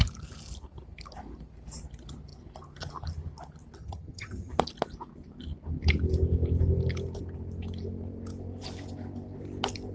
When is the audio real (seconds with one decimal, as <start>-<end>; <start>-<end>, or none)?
0.0-3.8; 4.5-9.9